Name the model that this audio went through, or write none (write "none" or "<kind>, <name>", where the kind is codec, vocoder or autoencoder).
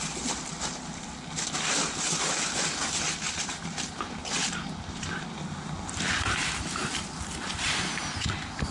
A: vocoder, BigVGAN v2